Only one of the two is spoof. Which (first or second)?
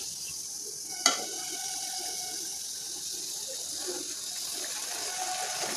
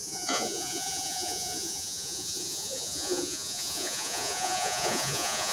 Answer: second